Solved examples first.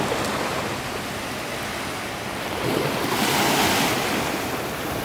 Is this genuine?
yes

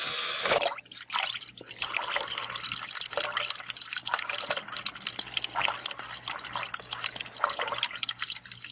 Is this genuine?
yes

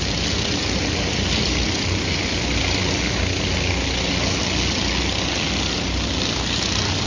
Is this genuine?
yes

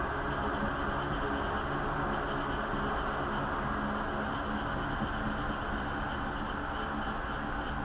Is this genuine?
yes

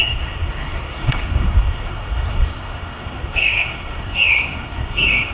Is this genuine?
no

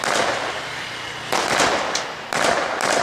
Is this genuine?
yes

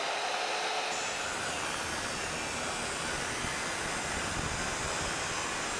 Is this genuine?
yes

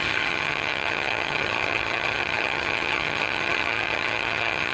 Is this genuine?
no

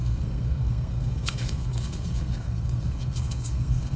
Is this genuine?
no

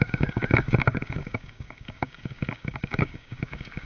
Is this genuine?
no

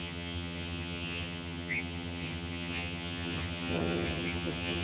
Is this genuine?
no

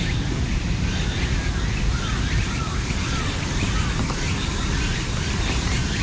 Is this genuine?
yes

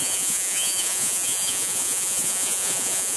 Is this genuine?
no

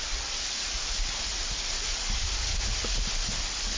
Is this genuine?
yes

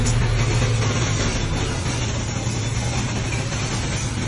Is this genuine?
yes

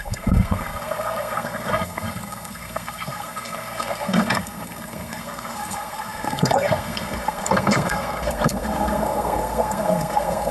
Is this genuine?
no